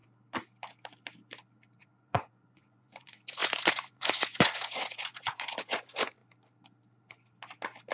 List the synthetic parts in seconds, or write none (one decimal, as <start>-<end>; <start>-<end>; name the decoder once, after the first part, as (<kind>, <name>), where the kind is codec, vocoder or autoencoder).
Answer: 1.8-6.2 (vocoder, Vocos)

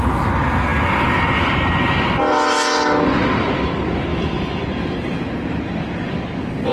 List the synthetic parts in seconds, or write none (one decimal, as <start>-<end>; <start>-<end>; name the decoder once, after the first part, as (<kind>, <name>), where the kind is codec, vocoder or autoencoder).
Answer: 4.1-4.6 (autoencoder, DAC-VAE)

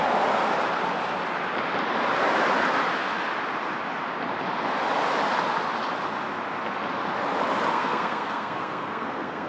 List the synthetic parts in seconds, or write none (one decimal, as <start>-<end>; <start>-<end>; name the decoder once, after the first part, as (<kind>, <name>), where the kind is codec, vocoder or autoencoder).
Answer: 7.7-9.5 (codec, SNAC)

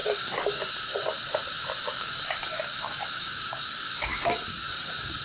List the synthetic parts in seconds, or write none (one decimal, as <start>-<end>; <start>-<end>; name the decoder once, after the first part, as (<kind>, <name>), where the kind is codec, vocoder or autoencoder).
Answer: 0.0-0.7 (codec, DAC); 1.8-5.2

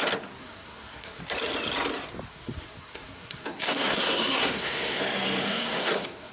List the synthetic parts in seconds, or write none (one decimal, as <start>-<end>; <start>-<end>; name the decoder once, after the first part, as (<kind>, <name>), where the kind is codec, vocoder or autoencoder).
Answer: 0.4-1.2 (codec, SNAC); 2.3-5.0; 5.4-6.3

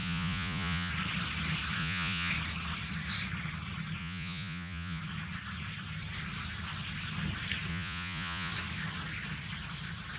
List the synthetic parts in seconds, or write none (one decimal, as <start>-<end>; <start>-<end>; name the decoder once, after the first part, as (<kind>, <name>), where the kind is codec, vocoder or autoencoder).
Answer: 0.0-0.9 (vocoder, Vocos); 1.8-2.3; 4.0-5.0; 7.7-8.5

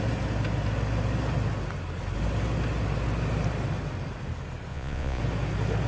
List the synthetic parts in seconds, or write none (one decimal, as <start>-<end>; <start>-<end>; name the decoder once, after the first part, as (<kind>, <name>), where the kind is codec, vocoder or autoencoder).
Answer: 4.7-5.2 (vocoder, Vocos)